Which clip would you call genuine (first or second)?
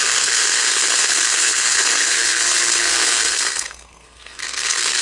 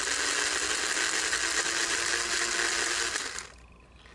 second